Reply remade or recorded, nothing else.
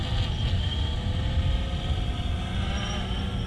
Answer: recorded